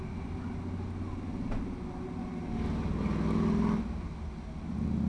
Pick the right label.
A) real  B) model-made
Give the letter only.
A